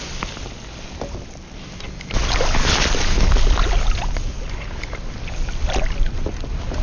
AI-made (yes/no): no